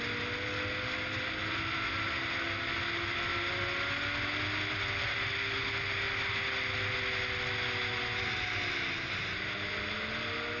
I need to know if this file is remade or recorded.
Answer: recorded